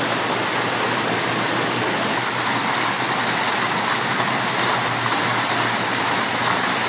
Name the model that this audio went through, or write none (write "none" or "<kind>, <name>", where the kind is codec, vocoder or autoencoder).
none